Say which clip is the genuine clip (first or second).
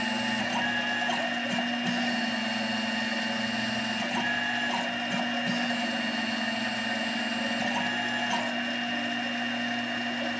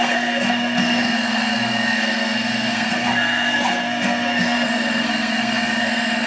first